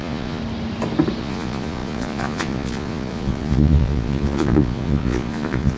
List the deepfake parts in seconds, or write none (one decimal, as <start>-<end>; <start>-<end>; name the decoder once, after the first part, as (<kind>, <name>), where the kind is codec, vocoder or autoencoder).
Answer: 0.0-0.4 (vocoder, Vocos); 1.2-5.8